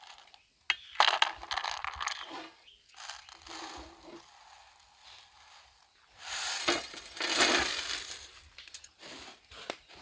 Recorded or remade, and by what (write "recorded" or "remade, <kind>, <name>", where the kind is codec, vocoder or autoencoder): recorded